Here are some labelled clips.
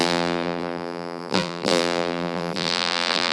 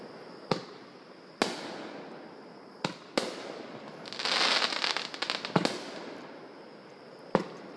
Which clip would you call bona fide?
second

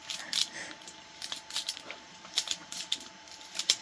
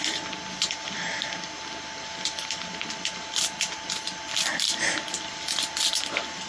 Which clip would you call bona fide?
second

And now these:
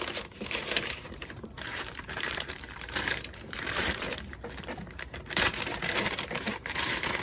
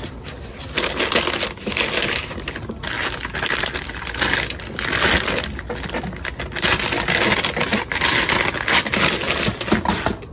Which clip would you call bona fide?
second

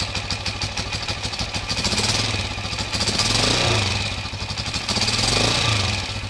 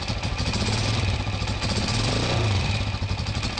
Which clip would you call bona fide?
first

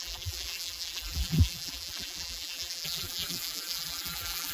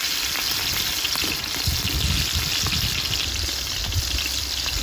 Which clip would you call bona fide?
second